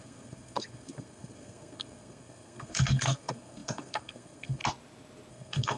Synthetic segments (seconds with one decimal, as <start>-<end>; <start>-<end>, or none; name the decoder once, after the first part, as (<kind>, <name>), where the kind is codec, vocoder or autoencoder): 0.0-4.6 (codec, SNAC); 5.3-5.8